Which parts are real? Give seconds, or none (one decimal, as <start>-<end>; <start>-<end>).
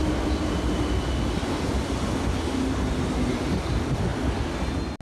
0.0-5.0